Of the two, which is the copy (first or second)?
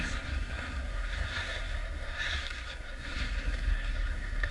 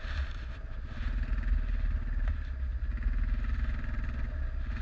first